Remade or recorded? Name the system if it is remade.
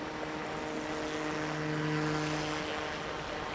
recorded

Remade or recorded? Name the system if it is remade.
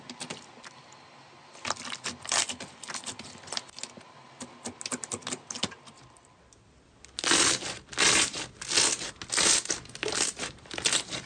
recorded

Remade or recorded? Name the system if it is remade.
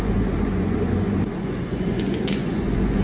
remade, vocoder, Vocos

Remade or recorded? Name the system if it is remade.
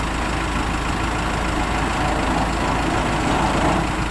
recorded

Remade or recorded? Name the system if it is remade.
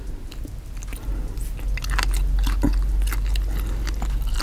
recorded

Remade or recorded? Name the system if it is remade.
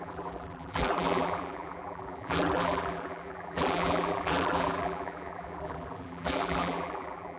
remade, vocoder, BigVGAN v2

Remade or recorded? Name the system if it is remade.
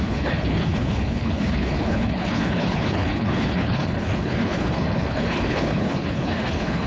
remade, codec, HILCodec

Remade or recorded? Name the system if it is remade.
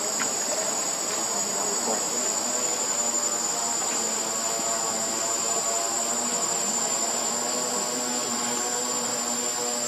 recorded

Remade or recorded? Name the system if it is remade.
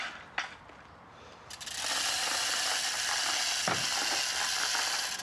recorded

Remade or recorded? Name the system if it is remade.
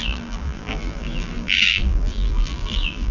remade, vocoder, BigVGAN v2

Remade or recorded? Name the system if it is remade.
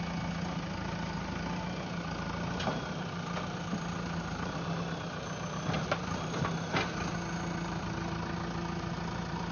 recorded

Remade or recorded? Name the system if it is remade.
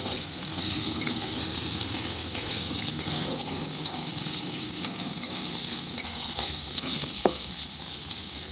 remade, codec, SNAC